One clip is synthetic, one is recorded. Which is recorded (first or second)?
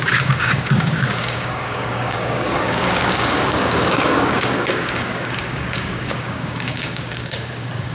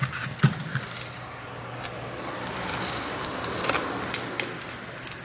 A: second